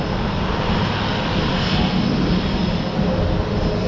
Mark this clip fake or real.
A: real